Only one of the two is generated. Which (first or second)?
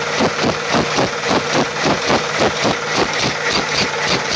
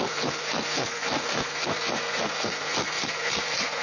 second